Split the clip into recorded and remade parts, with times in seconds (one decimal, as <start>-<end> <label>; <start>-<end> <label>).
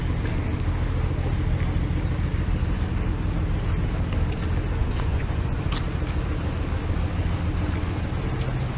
0.0-4.8 recorded; 4.8-5.6 remade; 5.6-8.8 recorded